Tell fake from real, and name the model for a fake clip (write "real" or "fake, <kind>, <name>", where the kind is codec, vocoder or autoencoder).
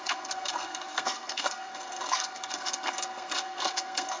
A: fake, codec, SNAC